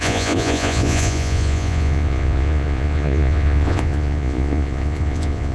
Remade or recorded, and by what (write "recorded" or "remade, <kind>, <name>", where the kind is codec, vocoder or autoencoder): remade, vocoder, Vocos